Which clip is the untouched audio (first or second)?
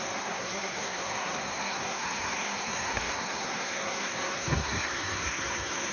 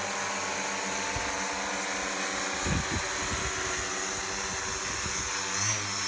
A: second